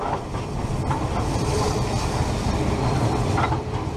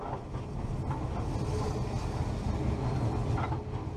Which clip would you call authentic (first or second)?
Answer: second